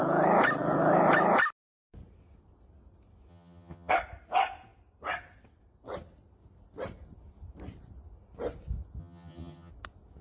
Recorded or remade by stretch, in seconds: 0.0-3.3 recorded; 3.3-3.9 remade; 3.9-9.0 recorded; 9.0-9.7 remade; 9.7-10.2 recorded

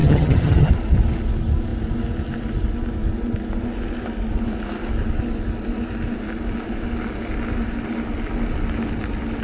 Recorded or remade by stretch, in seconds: 0.0-0.7 remade; 0.7-9.4 recorded

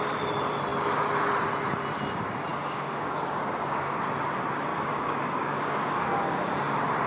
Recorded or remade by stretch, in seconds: 0.0-2.5 recorded; 2.5-3.9 remade; 3.9-4.7 recorded; 4.7-6.5 remade; 6.5-7.1 recorded

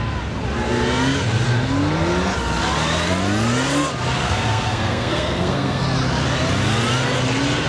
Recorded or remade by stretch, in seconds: 0.0-4.2 recorded; 4.2-5.8 remade; 5.8-7.7 recorded

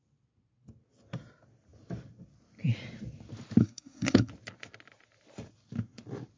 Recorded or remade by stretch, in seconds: 0.0-3.6 recorded; 3.6-4.3 remade; 4.3-6.4 recorded

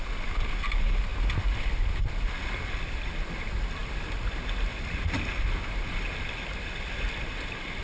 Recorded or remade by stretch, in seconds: 0.0-7.8 recorded